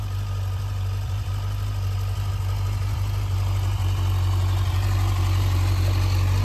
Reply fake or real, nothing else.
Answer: real